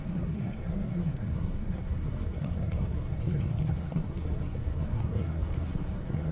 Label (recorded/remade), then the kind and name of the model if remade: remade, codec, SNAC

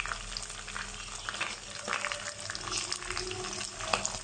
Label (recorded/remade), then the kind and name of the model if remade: recorded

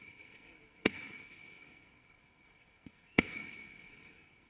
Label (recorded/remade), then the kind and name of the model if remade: remade, codec, SNAC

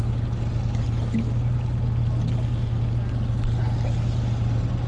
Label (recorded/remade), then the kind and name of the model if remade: recorded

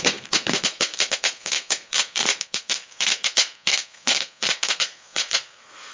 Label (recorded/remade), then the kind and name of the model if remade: remade, codec, SNAC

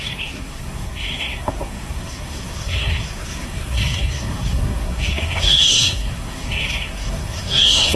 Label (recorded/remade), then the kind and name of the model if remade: remade, codec, SNAC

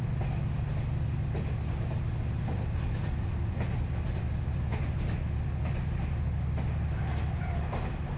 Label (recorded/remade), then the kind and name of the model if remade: recorded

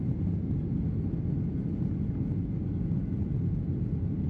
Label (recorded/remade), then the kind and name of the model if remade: recorded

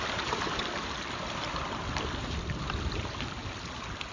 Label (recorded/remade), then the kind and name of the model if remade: recorded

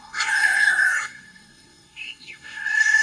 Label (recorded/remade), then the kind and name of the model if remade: remade, codec, SNAC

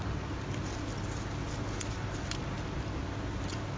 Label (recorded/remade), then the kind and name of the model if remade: recorded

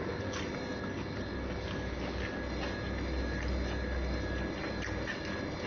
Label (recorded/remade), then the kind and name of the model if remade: recorded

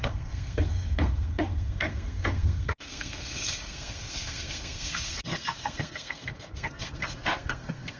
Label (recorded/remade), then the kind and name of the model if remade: remade, codec, SNAC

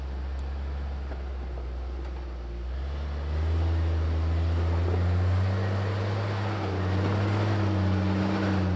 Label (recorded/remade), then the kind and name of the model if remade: recorded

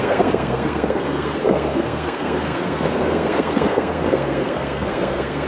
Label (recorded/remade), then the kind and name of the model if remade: remade, codec, SNAC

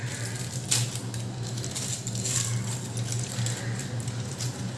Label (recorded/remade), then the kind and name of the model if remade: recorded